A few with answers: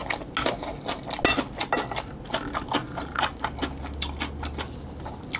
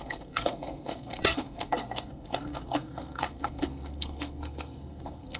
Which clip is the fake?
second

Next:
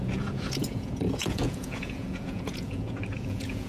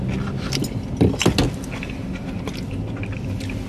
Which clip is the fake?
first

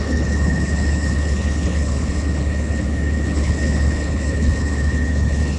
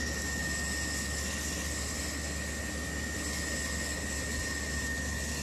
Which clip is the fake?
first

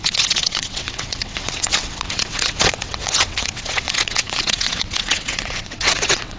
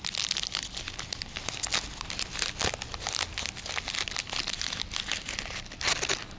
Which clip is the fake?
first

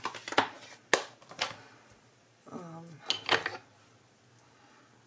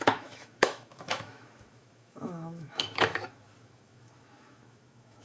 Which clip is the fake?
second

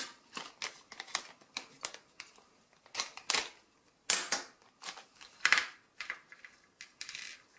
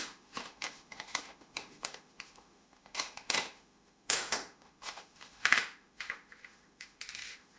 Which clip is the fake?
second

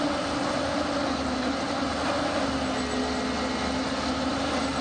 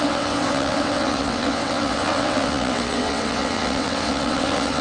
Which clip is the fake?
second